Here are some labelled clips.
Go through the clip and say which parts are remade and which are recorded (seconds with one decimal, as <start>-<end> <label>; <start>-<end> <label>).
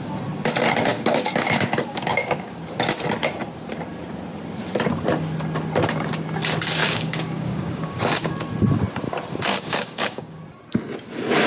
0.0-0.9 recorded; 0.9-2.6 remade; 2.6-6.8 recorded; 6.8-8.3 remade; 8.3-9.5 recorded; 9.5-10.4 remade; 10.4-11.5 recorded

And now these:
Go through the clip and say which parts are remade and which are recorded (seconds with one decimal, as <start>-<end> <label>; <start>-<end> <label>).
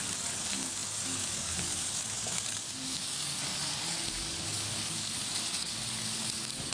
0.0-6.7 remade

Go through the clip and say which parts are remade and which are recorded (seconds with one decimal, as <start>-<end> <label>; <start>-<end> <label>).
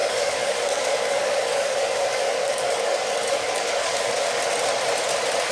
0.0-4.4 remade; 4.4-5.5 recorded